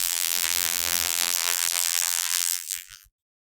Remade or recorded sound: remade